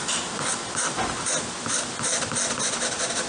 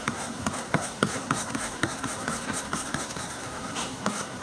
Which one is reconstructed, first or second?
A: second